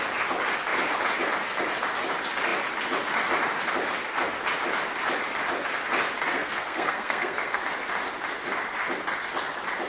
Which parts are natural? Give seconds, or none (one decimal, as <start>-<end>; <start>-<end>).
0.0-6.3; 7.6-9.9